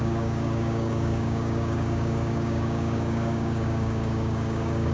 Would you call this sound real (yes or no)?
no